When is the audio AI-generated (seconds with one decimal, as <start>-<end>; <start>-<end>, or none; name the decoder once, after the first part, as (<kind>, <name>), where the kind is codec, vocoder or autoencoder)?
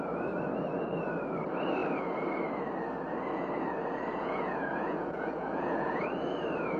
4.2-6.0 (vocoder, Vocos)